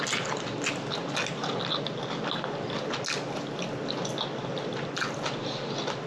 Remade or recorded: recorded